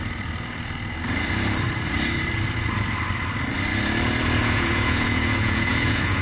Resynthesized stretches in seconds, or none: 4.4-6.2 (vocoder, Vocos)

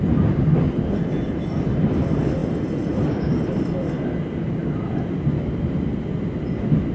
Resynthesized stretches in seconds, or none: 0.0-6.9 (vocoder, BigVGAN v2)

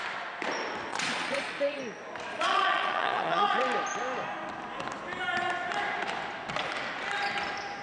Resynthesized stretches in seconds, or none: 0.9-1.8 (vocoder, Vocos); 2.3-3.6